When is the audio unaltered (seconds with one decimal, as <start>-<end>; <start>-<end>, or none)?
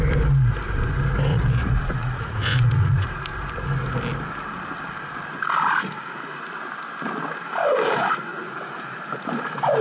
0.0-1.3; 3.2-8.3; 9.3-9.8